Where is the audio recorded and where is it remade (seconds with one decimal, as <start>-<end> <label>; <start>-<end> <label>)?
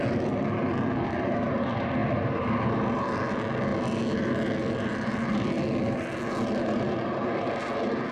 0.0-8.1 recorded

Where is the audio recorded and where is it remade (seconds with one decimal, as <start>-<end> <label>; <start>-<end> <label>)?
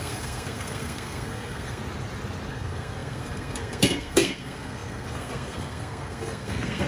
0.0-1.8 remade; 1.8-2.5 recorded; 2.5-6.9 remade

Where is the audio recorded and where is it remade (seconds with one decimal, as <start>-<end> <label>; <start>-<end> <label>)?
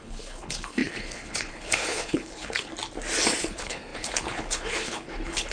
0.0-2.7 remade; 2.7-3.4 recorded; 3.4-5.5 remade